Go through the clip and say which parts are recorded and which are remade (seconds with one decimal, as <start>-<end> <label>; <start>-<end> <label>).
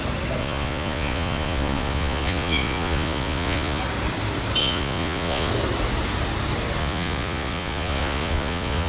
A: 0.0-0.4 recorded; 0.4-3.8 remade; 3.8-4.6 recorded; 4.6-5.5 remade; 5.5-6.8 recorded; 6.8-8.9 remade